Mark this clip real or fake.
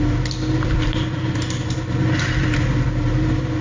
fake